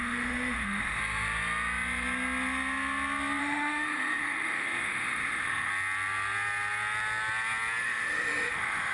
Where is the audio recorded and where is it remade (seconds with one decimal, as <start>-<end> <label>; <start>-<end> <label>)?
0.0-1.0 remade; 1.0-3.4 recorded; 3.4-5.7 remade; 5.7-7.8 recorded; 7.8-8.9 remade